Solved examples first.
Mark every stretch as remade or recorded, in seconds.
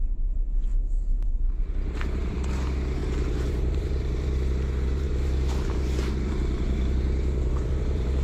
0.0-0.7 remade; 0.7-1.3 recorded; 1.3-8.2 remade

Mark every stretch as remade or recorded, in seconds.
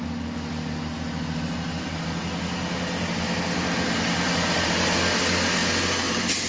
0.0-6.5 recorded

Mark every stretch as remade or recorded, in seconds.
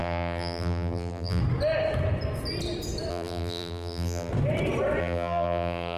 0.0-1.4 remade; 1.4-3.1 recorded; 3.1-4.3 remade; 4.3-5.0 recorded; 5.0-6.0 remade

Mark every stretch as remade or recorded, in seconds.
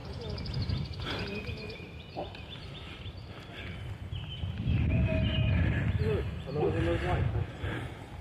0.0-8.2 recorded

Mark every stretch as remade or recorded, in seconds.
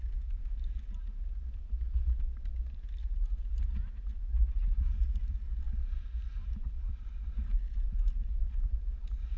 0.0-9.4 recorded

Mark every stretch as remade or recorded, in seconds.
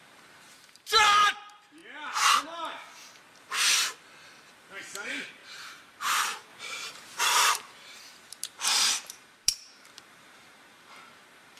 0.0-1.8 remade; 1.8-4.8 recorded; 4.8-6.5 remade; 6.5-7.2 recorded; 7.2-11.6 remade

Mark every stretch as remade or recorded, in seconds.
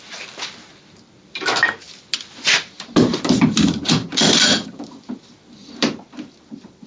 0.0-3.1 recorded; 3.1-6.9 remade